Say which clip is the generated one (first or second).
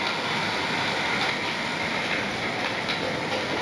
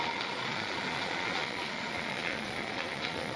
second